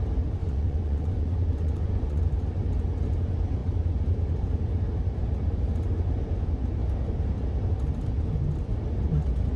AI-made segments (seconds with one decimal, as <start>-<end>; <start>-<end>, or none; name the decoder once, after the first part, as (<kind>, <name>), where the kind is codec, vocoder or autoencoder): 0.4-2.2 (vocoder, Vocos)